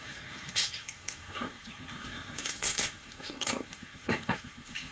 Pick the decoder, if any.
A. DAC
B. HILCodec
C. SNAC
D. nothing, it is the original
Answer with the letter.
C